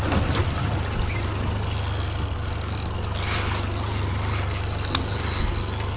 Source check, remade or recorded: recorded